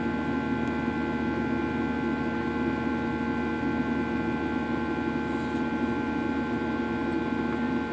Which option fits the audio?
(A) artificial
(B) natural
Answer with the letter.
B